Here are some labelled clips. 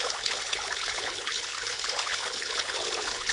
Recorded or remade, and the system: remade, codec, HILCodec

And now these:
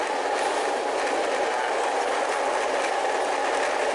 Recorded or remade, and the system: recorded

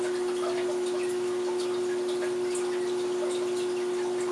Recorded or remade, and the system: recorded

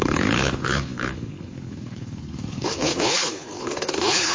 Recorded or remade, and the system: remade, codec, HILCodec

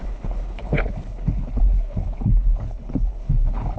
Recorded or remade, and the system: remade, codec, HILCodec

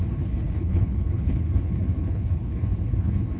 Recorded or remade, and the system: remade, codec, HILCodec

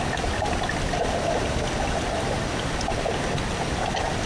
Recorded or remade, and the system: recorded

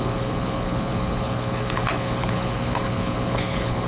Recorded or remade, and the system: remade, codec, HILCodec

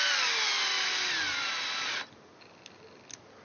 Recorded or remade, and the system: recorded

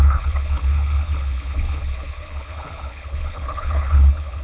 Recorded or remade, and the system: remade, codec, HILCodec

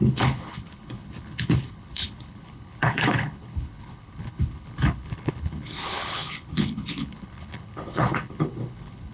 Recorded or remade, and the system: remade, codec, HILCodec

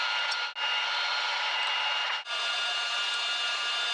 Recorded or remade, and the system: recorded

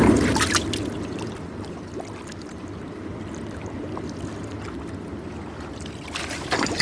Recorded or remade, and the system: recorded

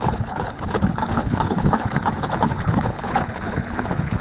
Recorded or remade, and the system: remade, codec, HILCodec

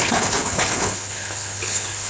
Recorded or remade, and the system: remade, codec, HILCodec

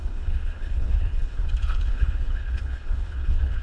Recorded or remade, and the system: remade, codec, HILCodec